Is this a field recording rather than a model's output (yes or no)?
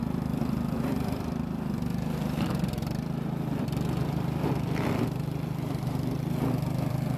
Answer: no